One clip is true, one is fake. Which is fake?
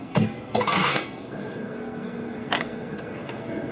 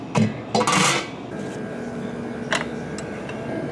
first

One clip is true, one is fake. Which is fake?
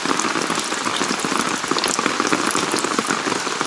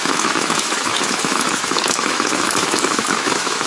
second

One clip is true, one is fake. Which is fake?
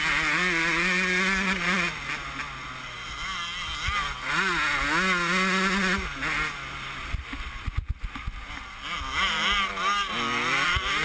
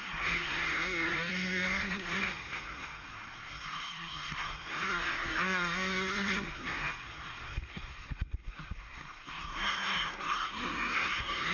second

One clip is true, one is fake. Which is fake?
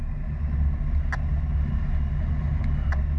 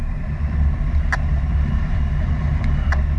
second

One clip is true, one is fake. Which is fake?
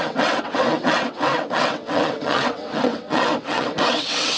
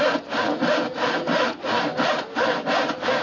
first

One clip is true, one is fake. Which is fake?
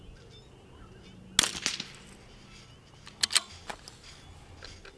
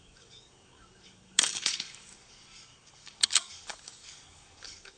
second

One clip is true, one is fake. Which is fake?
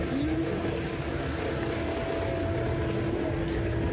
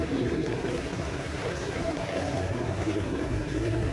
second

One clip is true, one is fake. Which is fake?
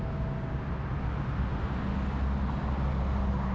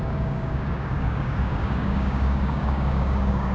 second